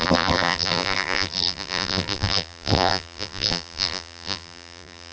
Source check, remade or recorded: remade